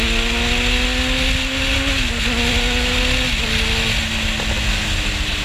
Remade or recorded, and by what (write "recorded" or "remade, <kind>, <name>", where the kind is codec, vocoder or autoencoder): recorded